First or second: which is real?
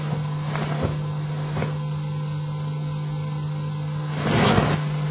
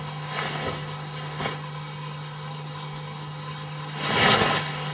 first